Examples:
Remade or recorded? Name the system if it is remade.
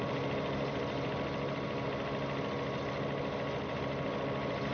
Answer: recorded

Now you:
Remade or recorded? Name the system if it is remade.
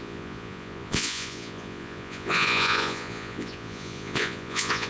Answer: remade, vocoder, Vocos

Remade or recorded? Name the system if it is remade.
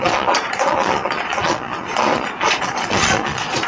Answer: remade, vocoder, Vocos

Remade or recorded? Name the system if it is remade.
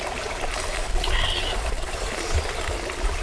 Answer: recorded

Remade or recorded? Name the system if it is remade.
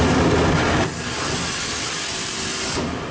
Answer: recorded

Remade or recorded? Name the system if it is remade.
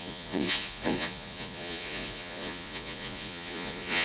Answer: remade, vocoder, Vocos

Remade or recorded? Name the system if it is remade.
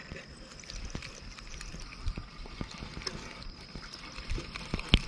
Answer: recorded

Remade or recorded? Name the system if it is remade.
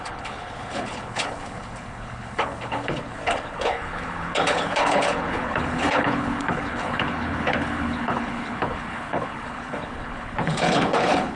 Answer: remade, codec, HILCodec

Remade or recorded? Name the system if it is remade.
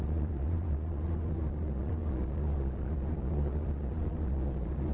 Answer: remade, vocoder, Vocos